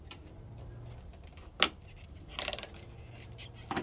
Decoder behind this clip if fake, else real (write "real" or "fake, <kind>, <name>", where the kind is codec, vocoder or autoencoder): real